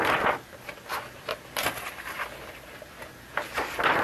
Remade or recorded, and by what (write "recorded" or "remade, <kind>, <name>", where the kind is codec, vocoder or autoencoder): recorded